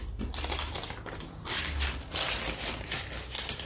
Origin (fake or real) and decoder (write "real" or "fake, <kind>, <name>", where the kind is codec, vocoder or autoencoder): real